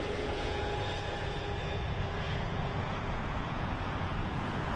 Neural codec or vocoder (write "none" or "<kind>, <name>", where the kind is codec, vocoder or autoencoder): vocoder, Vocos